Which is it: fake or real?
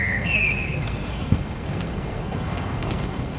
fake